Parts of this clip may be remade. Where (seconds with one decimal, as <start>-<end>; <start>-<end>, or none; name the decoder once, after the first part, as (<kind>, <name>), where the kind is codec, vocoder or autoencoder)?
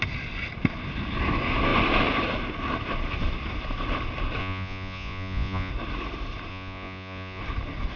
4.4-5.7 (vocoder, Vocos); 6.5-7.4